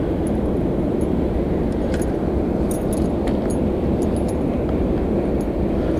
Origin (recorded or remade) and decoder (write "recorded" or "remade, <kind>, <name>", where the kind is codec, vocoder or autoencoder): recorded